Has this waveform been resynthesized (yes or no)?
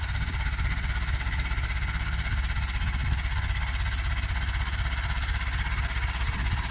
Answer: no